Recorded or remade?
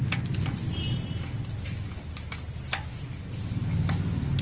recorded